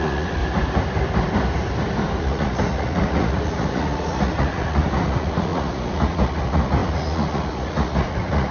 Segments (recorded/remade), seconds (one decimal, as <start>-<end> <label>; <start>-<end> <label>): 0.0-0.4 remade; 0.4-2.2 recorded; 2.2-8.5 remade